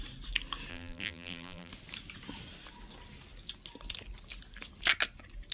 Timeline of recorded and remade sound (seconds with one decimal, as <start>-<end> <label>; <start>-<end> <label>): 0.0-0.7 recorded; 0.7-1.7 remade; 1.7-5.5 recorded